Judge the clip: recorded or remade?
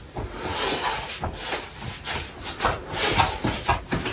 recorded